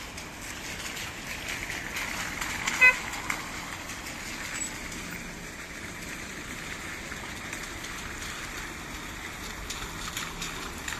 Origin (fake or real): real